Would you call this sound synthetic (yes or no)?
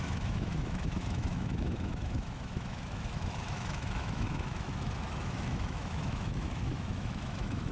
yes